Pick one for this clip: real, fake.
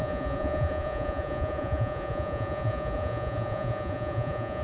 fake